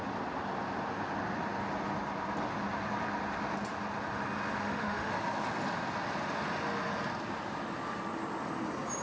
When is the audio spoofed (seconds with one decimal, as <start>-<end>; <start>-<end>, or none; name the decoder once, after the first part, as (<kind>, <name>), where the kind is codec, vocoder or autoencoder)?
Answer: 4.6-5.1 (autoencoder, DAC-VAE)

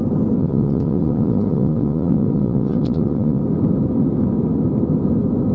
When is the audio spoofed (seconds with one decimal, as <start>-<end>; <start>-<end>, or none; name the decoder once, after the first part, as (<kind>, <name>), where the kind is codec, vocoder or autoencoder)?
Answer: 0.4-3.4 (vocoder, Vocos)

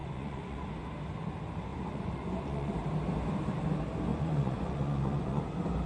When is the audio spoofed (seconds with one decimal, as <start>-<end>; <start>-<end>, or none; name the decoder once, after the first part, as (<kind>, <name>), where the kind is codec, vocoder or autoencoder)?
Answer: 0.0-0.7 (vocoder, Vocos); 1.7-2.7; 4.1-5.4

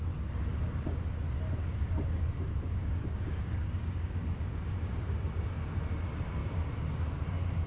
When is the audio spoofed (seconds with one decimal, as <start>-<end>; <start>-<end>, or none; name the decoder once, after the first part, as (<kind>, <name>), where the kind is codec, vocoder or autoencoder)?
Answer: 0.5-1.1 (codec, DAC); 2.8-4.5; 6.4-7.2

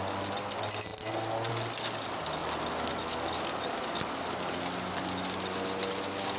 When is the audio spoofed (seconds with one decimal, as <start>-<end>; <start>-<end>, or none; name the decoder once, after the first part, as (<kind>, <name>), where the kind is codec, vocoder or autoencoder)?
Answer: 0.0-0.9 (vocoder, BigVGAN v2); 1.5-2.4

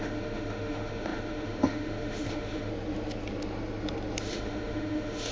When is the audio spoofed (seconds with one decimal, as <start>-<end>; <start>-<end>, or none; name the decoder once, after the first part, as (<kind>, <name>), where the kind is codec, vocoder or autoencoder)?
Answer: 0.0-2.7 (autoencoder, DAC-VAE); 4.2-5.3

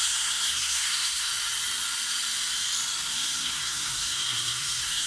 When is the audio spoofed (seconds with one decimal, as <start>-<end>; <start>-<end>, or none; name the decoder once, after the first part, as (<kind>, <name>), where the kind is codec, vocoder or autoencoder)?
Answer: 0.0-1.3 (codec, SNAC); 3.1-5.1

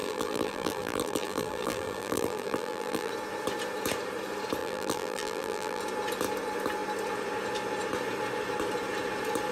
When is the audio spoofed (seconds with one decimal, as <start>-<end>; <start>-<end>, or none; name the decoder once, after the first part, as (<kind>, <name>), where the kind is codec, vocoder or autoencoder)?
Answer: 0.0-3.1 (vocoder, BigVGAN v2); 4.6-5.8